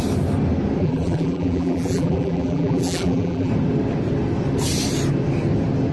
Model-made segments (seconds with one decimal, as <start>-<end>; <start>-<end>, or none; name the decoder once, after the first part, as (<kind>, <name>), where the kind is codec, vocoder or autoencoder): 0.8-3.5 (vocoder, BigVGAN v2)